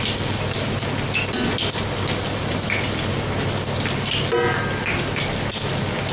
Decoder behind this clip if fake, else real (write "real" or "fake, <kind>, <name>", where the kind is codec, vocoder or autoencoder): real